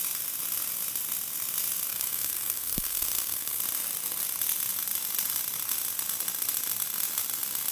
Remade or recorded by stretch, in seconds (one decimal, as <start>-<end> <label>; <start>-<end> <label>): 0.0-1.9 recorded; 1.9-3.6 remade; 3.6-7.7 recorded